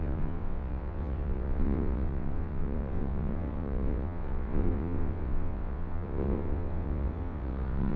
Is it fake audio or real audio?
fake